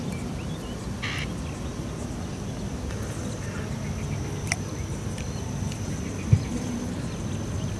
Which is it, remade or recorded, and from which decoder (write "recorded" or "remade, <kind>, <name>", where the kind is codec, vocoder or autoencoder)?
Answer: recorded